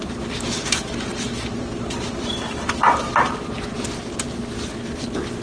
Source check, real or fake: real